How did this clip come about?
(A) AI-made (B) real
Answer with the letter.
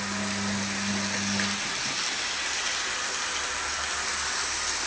B